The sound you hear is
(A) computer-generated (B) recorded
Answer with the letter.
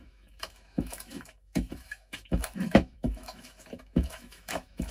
A